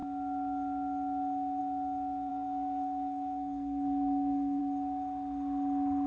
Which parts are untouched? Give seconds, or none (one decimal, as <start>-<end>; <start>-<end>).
0.0-2.3; 4.6-6.1